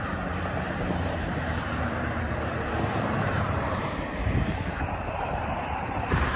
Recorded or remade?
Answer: remade